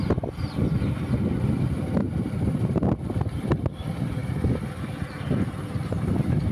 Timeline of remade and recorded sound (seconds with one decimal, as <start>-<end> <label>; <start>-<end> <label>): 0.0-2.0 recorded; 2.0-2.8 remade; 2.8-4.2 recorded; 4.2-4.7 remade; 4.7-6.5 recorded